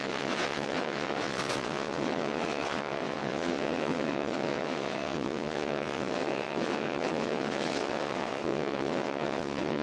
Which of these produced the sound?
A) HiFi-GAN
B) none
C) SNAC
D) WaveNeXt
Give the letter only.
D